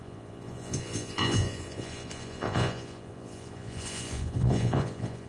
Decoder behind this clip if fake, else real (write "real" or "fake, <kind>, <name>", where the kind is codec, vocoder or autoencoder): fake, vocoder, Vocos